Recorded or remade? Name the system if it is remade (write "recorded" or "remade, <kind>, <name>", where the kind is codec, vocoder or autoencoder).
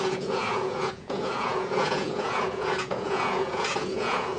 remade, vocoder, Vocos